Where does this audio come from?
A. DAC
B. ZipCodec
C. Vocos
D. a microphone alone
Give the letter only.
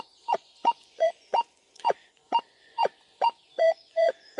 C